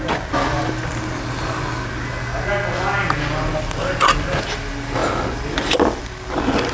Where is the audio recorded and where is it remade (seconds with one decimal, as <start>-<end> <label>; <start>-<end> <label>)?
0.0-6.7 recorded